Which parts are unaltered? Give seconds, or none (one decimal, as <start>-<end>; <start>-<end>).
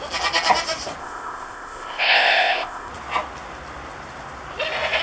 0.0-1.0; 2.9-5.0